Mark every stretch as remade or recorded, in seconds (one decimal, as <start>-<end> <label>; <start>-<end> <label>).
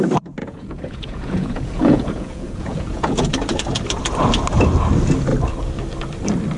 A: 0.0-0.4 recorded; 0.4-3.3 remade; 3.3-6.6 recorded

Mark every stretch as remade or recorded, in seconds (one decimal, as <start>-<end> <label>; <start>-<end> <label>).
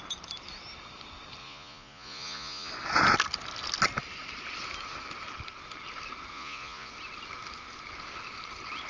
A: 0.0-1.4 recorded; 1.4-2.7 remade; 2.7-6.3 recorded; 6.3-6.9 remade; 6.9-8.9 recorded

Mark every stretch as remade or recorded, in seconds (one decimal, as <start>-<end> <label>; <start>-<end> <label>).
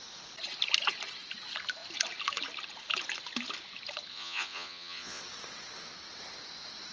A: 0.0-4.1 recorded; 4.1-5.2 remade; 5.2-6.9 recorded